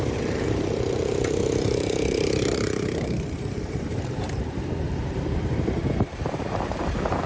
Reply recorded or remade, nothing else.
remade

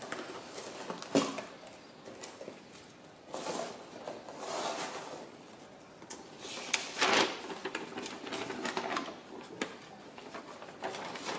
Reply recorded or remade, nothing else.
recorded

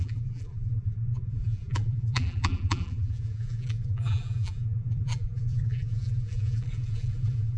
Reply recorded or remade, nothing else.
remade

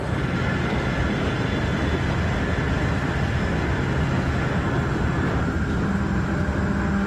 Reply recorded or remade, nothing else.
recorded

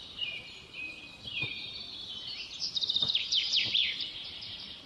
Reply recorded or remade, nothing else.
remade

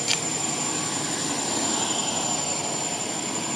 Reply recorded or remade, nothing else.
recorded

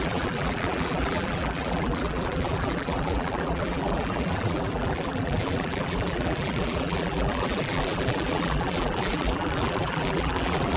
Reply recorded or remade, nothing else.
remade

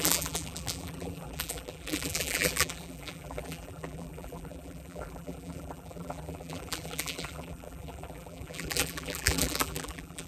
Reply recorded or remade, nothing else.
remade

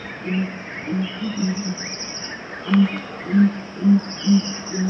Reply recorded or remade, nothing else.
recorded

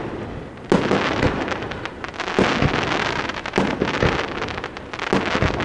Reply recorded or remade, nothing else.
recorded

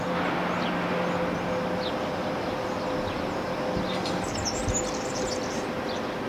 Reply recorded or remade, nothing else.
recorded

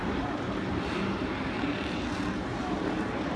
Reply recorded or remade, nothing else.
remade